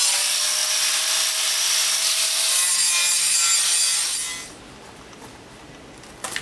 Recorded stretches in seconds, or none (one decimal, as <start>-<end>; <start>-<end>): 0.0-6.4